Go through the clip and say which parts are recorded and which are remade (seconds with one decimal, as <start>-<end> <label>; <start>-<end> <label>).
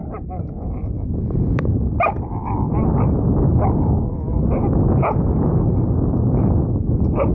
0.0-7.3 recorded